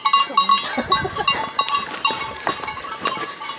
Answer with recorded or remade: recorded